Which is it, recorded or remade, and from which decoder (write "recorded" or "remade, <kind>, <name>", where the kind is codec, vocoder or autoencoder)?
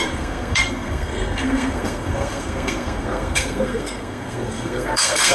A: remade, codec, SNAC